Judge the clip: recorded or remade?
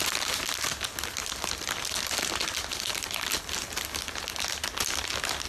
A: recorded